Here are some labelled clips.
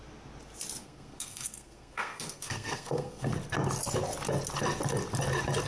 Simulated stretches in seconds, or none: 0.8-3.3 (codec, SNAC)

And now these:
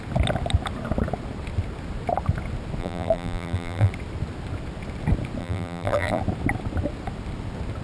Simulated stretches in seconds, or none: 2.8-3.9 (vocoder, BigVGAN v2); 5.4-6.2

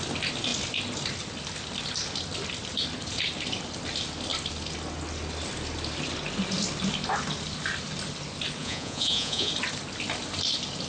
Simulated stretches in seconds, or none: 8.6-9.5 (vocoder, Vocos)

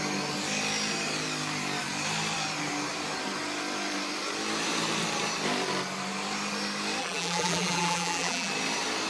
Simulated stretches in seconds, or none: 7.0-8.5 (vocoder, BigVGAN v2)